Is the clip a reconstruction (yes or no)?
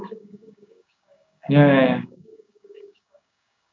yes